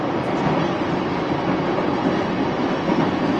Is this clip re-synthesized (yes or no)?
no